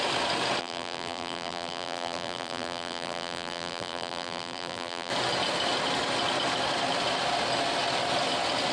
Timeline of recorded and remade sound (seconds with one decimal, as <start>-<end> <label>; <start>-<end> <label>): 0.0-0.6 recorded; 0.6-5.1 remade; 5.1-8.7 recorded